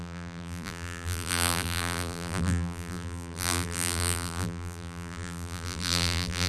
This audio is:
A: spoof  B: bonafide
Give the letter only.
A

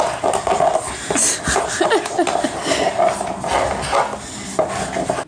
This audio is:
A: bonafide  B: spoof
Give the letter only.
A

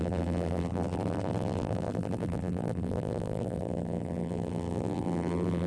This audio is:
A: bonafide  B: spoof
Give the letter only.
B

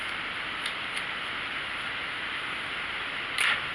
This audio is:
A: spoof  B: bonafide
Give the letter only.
B